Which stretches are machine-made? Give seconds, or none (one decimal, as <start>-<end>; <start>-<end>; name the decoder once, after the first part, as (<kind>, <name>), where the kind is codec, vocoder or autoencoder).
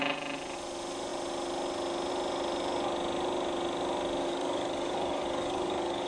4.2-6.1 (codec, DAC)